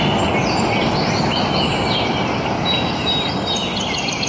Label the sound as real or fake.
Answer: real